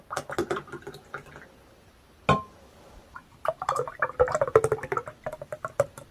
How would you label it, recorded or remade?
recorded